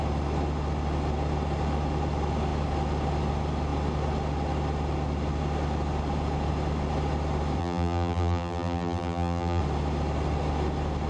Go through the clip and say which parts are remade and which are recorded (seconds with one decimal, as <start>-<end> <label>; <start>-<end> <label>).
0.0-7.6 recorded; 7.6-9.6 remade; 9.6-11.1 recorded